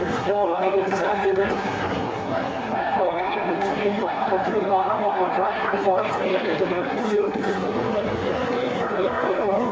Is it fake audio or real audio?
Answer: fake